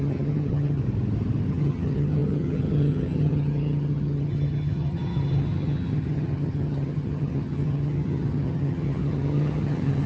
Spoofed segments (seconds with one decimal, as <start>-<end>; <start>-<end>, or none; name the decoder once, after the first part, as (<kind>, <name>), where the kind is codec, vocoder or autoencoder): 0.0-0.8 (vocoder, HiFi-GAN); 1.5-10.1

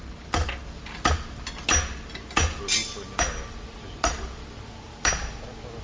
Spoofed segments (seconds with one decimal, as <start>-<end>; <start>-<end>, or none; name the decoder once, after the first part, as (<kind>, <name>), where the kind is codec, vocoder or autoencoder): none

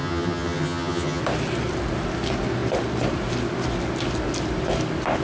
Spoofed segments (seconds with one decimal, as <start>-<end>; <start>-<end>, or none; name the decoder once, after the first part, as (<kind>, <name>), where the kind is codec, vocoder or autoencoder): 0.0-1.2 (vocoder, HiFi-GAN)

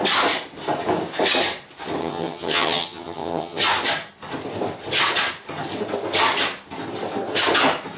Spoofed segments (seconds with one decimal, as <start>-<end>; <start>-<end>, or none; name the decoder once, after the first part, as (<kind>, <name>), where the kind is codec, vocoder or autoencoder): 2.0-3.6 (vocoder, HiFi-GAN)

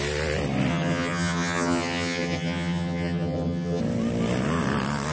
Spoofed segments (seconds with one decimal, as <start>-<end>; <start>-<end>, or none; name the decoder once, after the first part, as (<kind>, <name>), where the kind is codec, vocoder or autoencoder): 0.7-3.8 (vocoder, HiFi-GAN)